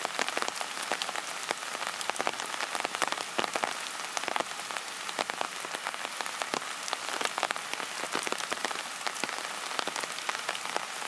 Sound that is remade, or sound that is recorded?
recorded